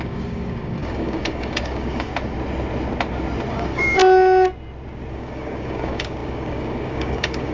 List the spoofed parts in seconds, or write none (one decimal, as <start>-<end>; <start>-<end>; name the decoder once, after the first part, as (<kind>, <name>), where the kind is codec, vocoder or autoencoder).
0.0-2.1 (codec, DAC); 3.5-4.0; 5.1-7.5